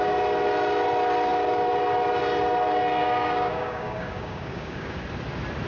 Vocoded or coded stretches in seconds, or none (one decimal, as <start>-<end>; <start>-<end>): 3.0-5.0